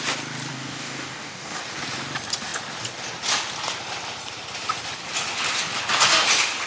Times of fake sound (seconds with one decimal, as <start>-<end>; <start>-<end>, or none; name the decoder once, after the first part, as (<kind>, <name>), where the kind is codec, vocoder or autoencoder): 0.5-1.6 (codec, DAC)